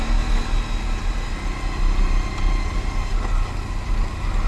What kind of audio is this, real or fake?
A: real